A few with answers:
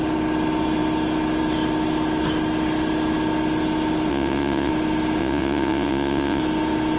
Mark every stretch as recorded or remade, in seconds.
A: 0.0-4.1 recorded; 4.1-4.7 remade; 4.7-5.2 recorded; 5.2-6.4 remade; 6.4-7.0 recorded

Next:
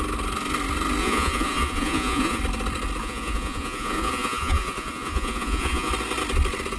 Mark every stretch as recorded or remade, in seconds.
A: 0.0-1.0 recorded; 1.0-2.4 remade; 2.4-3.0 recorded; 3.0-5.9 remade; 5.9-6.8 recorded

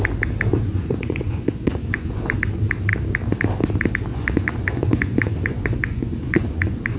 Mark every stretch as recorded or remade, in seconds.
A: 0.0-0.5 recorded; 0.5-2.4 remade; 2.4-4.1 recorded; 4.1-7.0 remade

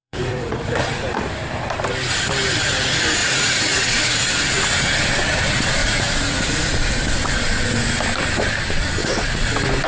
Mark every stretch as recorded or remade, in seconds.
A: 0.0-0.7 remade; 0.7-3.2 recorded; 3.2-4.3 remade; 4.3-5.8 recorded; 5.8-6.6 remade; 6.6-9.0 recorded; 9.0-9.5 remade; 9.5-9.9 recorded

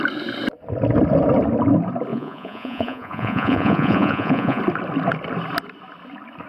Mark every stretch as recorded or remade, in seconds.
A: 0.0-2.1 recorded; 2.1-4.6 remade; 4.6-6.5 recorded

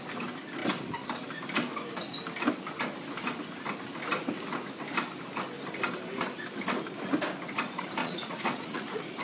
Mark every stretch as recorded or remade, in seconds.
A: 0.0-8.0 recorded; 8.0-9.2 remade

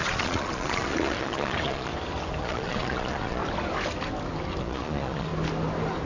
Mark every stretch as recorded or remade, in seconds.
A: 0.0-1.9 remade; 1.9-2.4 recorded; 2.4-3.4 remade; 3.4-4.6 recorded; 4.6-5.3 remade; 5.3-6.1 recorded